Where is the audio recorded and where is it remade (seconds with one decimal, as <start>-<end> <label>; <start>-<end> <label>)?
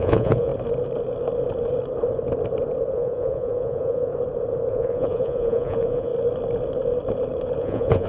0.0-0.5 remade; 0.5-2.9 recorded; 2.9-4.1 remade; 4.1-4.7 recorded; 4.7-6.1 remade; 6.1-7.6 recorded; 7.6-8.1 remade